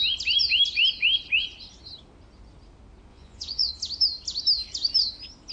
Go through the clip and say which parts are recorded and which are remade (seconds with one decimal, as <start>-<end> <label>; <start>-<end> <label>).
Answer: 0.0-3.1 recorded; 3.1-3.7 remade; 3.7-5.5 recorded